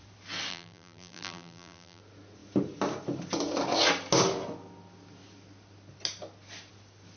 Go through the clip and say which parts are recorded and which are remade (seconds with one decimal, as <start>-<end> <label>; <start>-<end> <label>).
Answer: 0.0-0.5 recorded; 0.5-2.0 remade; 2.0-7.2 recorded